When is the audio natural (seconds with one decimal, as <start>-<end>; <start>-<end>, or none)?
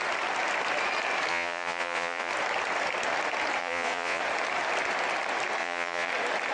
0.0-1.3; 2.3-3.6; 4.2-5.6; 6.1-6.5